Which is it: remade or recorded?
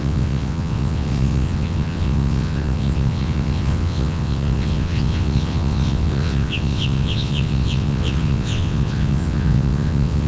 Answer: remade